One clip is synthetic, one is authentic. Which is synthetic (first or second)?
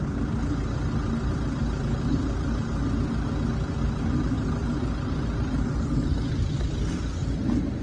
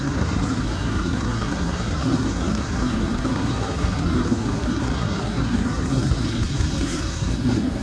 second